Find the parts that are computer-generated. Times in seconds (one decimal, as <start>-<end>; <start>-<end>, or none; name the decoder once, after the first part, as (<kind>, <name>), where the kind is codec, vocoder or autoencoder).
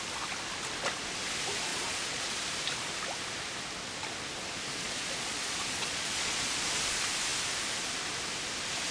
1.7-2.4 (vocoder, Vocos); 4.7-6.8